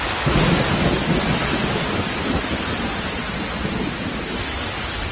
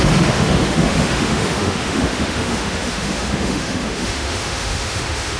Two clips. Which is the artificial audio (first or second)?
second